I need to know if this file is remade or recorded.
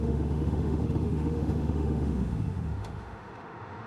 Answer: remade